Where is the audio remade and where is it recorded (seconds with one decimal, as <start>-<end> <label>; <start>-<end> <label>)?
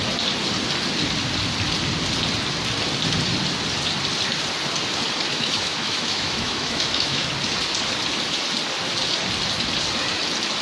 0.0-5.3 recorded; 5.3-7.3 remade; 7.3-10.6 recorded